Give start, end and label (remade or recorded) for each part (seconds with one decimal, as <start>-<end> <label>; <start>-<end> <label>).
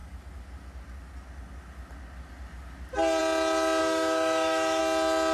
0.0-3.8 recorded; 3.8-4.8 remade; 4.8-5.3 recorded